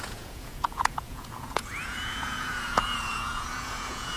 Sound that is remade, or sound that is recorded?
remade